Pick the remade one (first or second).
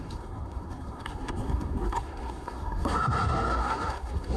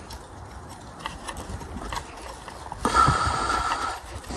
first